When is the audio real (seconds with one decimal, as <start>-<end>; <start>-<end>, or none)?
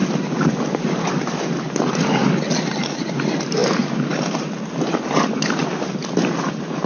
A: 0.0-6.9